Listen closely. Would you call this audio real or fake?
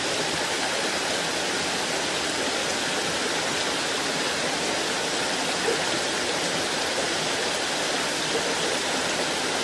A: real